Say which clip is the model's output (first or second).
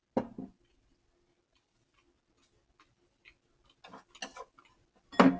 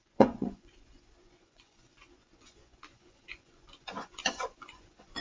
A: second